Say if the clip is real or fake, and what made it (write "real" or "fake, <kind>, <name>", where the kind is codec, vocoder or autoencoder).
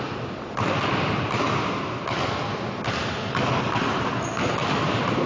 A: real